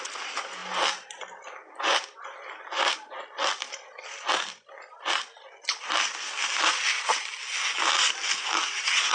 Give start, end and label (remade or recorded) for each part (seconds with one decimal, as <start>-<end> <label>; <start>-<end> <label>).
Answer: 0.0-9.1 recorded